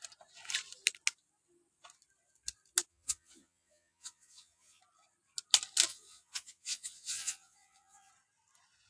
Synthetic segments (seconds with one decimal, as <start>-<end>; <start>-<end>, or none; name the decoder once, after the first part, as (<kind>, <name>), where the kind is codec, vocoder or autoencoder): 2.9-4.8 (vocoder, Vocos); 5.9-8.1